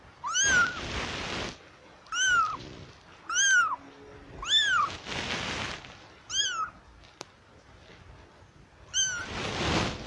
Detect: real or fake real